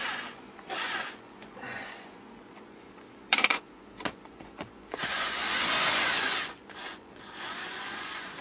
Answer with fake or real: fake